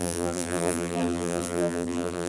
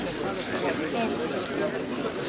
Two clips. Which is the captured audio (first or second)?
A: second